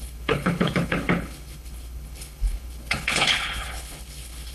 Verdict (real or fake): fake